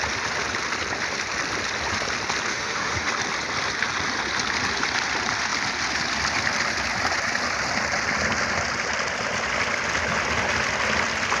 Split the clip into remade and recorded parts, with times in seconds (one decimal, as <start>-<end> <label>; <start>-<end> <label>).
0.0-2.5 recorded; 2.5-3.1 remade; 3.1-11.4 recorded